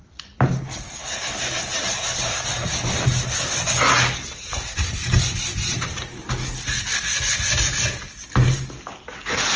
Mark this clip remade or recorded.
recorded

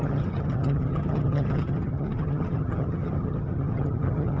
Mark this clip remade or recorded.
remade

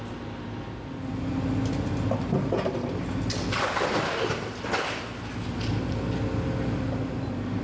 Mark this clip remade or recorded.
recorded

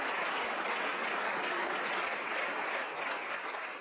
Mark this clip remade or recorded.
recorded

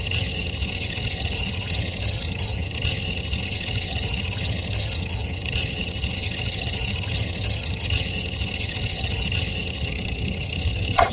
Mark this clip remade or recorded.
remade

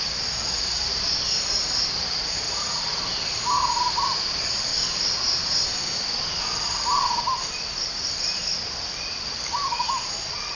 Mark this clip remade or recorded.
recorded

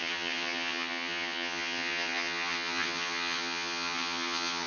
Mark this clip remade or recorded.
remade